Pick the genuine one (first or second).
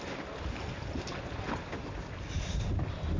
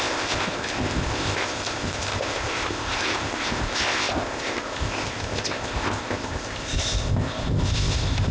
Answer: first